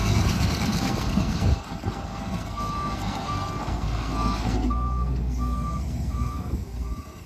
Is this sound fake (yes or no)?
yes